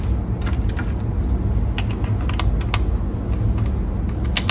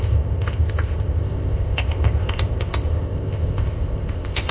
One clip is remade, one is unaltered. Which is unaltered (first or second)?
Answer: first